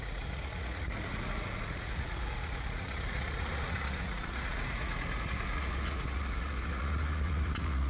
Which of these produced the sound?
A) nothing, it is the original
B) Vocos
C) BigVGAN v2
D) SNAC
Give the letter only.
B